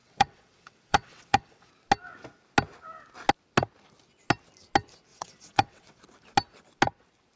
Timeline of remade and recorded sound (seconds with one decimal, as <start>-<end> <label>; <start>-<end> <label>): 0.0-1.7 remade; 1.7-5.1 recorded; 5.1-6.0 remade; 6.0-7.4 recorded